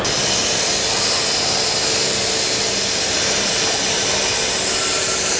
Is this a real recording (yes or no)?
yes